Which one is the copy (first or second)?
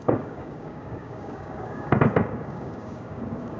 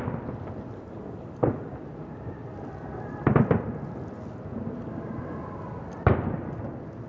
first